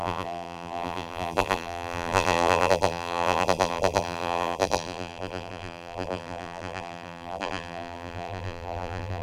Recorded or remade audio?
remade